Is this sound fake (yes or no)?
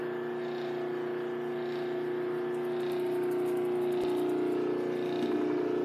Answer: no